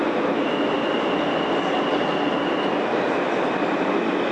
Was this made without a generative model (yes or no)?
yes